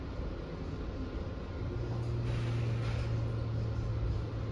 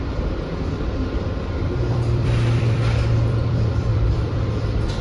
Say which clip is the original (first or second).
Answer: first